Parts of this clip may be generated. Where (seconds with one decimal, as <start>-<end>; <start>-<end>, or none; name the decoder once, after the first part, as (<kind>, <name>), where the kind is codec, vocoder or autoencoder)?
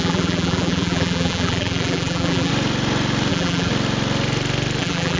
0.0-2.5 (vocoder, BigVGAN v2); 3.3-3.7; 4.8-5.2